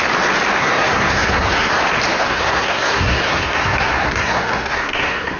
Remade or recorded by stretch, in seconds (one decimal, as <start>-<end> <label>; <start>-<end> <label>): 0.0-0.6 recorded; 0.6-1.7 remade; 1.7-2.2 recorded; 2.2-5.4 remade